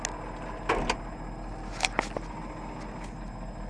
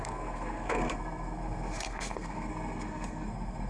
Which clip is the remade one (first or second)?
second